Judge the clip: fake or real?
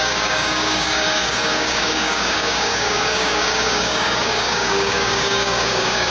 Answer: fake